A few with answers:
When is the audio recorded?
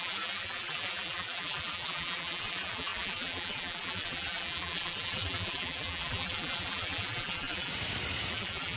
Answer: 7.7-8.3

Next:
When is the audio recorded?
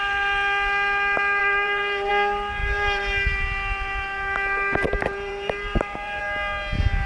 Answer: 0.0-1.4; 2.1-2.6; 6.2-7.1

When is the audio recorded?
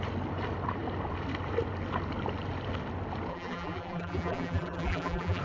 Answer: 0.0-3.3